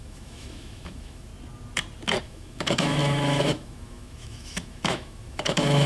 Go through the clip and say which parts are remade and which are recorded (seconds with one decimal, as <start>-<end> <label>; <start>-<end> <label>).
0.0-1.3 remade; 1.3-2.2 recorded; 2.2-5.9 remade